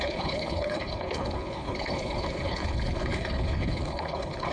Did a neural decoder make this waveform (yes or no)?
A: yes